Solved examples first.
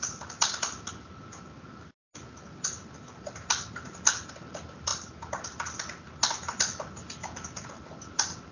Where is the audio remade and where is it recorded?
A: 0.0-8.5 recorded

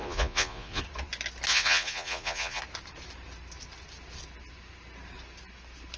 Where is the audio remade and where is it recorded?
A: 0.0-0.8 remade; 0.8-1.5 recorded; 1.5-2.6 remade; 2.6-6.0 recorded